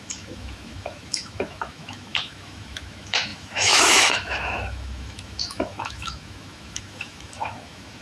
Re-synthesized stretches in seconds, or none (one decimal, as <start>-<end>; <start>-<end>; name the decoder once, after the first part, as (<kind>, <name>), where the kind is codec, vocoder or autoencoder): 0.0-8.0 (autoencoder, DAC-VAE)